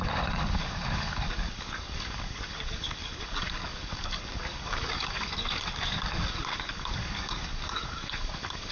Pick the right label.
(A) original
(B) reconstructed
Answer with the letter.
B